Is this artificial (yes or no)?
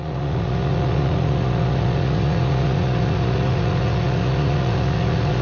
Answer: yes